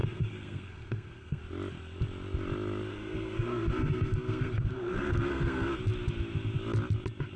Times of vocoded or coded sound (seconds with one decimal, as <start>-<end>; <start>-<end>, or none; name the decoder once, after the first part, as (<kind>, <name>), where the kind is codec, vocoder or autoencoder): 0.0-1.4 (codec, SNAC); 2.9-5.8